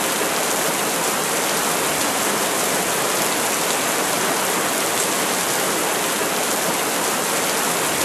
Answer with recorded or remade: recorded